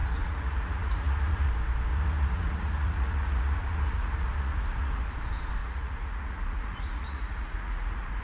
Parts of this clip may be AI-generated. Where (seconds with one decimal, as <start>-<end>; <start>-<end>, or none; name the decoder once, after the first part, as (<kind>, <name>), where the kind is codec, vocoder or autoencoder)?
0.0-1.5 (vocoder, Vocos); 1.9-5.0; 5.6-8.2